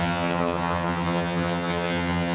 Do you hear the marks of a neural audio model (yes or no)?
yes